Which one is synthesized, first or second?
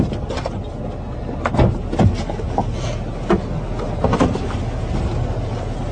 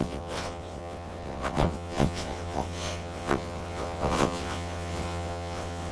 second